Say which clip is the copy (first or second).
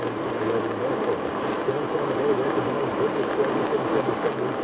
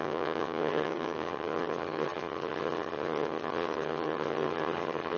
second